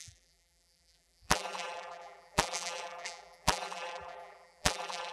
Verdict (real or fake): fake